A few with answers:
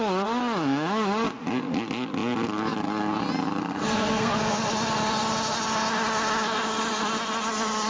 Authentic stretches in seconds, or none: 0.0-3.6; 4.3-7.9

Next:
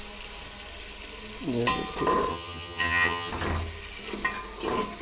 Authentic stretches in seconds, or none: 0.0-2.3; 3.3-5.0